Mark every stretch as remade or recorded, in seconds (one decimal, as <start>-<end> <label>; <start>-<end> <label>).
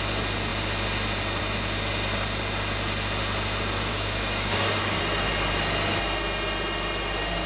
0.0-3.9 recorded; 3.9-5.0 remade; 5.0-7.5 recorded